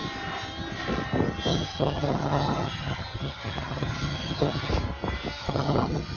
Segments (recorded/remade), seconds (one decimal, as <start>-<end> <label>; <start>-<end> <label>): 0.0-1.5 recorded; 1.5-4.7 remade; 4.7-5.4 recorded; 5.4-6.2 remade

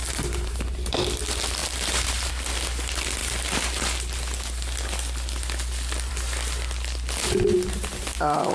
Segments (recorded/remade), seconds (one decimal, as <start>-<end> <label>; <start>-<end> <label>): 0.0-1.2 remade; 1.2-1.6 recorded; 1.6-2.3 remade; 2.3-8.5 recorded

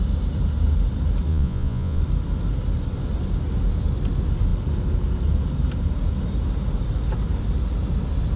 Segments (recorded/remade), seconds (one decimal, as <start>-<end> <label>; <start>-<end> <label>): 0.0-1.3 recorded; 1.3-2.0 remade; 2.0-8.4 recorded

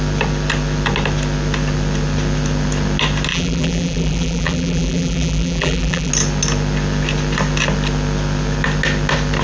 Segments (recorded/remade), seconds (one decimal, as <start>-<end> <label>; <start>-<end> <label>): 0.0-3.3 recorded; 3.3-6.1 remade; 6.1-9.4 recorded

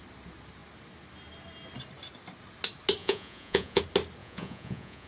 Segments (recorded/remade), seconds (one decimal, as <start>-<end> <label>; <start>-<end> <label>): 0.0-3.0 recorded; 3.0-3.8 remade; 3.8-4.2 recorded; 4.2-5.1 remade